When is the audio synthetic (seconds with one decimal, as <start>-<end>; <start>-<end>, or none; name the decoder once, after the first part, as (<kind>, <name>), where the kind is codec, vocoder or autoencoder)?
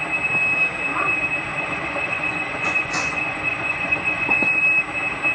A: 1.5-4.6 (vocoder, Vocos)